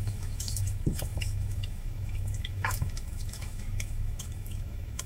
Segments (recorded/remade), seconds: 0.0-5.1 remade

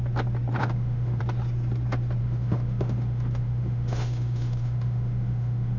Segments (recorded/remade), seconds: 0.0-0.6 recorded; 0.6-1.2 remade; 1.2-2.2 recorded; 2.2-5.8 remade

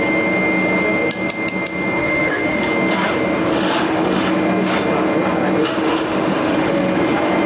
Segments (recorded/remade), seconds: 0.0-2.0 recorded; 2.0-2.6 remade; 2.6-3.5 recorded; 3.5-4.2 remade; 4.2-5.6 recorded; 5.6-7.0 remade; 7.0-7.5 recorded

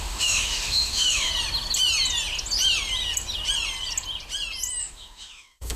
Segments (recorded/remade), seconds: 0.0-1.3 remade; 1.3-4.8 recorded; 4.8-5.8 remade

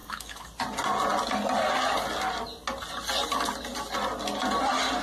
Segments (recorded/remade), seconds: 0.0-0.5 remade; 0.5-5.0 recorded